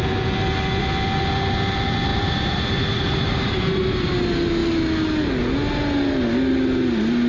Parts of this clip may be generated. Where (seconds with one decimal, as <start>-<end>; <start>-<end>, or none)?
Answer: 2.1-4.1

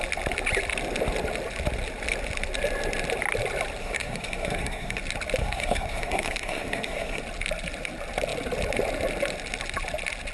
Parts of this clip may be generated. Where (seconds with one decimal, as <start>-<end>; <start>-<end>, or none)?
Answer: 3.8-5.0; 5.4-7.2

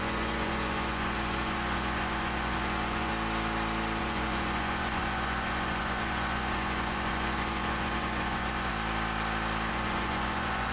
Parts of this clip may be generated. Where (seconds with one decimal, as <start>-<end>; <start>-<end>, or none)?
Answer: 0.0-3.1; 4.0-8.7; 9.7-10.7

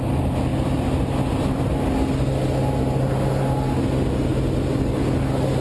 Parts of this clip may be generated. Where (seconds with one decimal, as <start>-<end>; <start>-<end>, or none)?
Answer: none

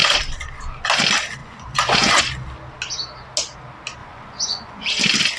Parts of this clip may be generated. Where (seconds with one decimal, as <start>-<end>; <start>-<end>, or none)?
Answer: 1.4-2.2; 4.0-4.9